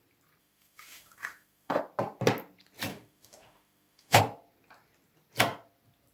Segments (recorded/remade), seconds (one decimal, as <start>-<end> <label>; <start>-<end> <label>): 0.0-0.4 recorded; 0.4-1.8 remade; 1.8-2.9 recorded; 2.9-4.2 remade; 4.2-6.1 recorded